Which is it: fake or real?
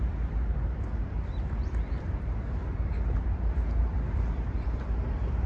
fake